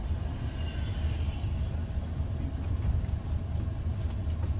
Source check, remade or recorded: recorded